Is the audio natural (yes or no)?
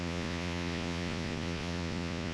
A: no